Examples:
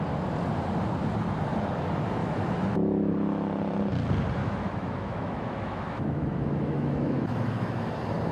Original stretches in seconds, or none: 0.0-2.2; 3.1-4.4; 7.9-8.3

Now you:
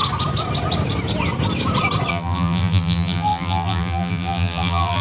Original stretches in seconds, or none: 0.0-2.1

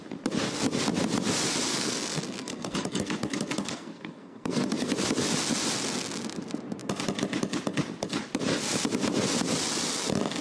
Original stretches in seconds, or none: 0.0-1.7; 4.9-10.4

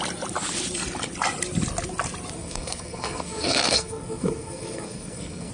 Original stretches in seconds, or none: 0.0-2.4

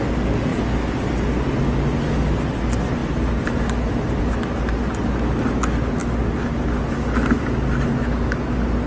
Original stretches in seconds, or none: 0.0-8.9